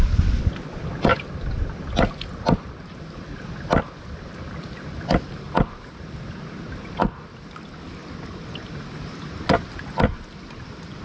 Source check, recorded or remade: recorded